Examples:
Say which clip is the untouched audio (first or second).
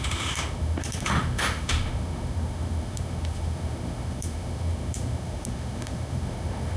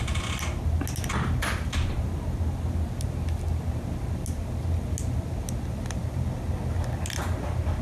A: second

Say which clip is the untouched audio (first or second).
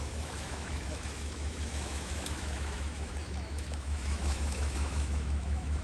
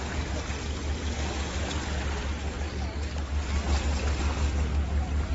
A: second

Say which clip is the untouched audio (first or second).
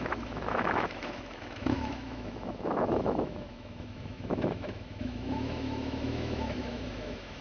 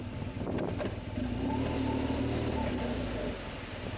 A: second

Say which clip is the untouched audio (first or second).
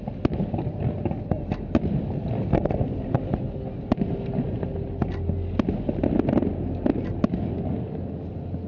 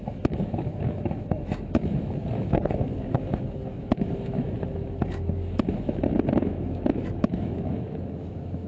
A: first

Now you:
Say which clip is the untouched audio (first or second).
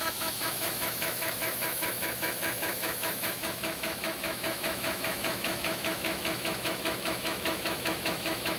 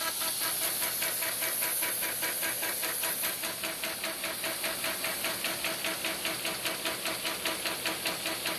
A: second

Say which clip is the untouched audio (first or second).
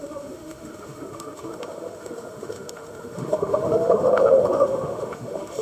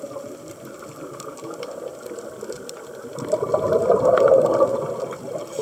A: second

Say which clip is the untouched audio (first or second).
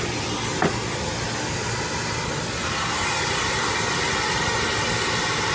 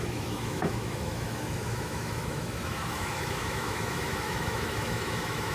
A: first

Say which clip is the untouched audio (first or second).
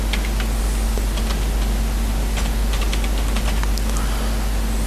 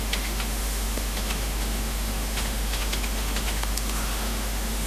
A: first